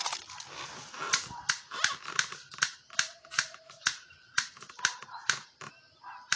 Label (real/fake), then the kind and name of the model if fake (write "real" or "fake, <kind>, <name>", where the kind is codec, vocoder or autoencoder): real